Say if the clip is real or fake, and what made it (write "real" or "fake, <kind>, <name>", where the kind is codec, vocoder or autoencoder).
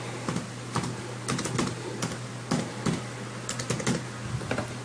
real